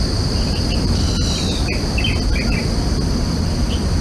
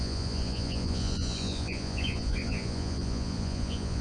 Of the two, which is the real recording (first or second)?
first